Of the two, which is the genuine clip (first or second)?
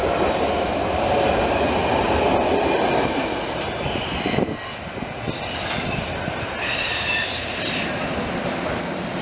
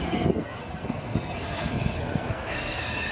first